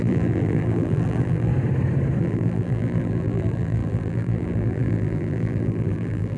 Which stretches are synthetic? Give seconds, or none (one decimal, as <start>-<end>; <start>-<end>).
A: 0.0-1.5; 2.2-6.4